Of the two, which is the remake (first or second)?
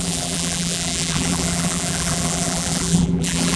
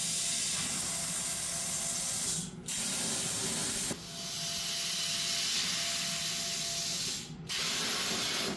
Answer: first